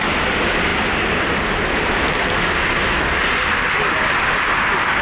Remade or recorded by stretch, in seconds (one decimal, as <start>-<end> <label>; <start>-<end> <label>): 0.0-5.0 recorded